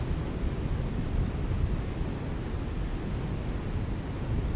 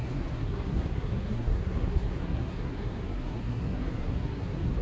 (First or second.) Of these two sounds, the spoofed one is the second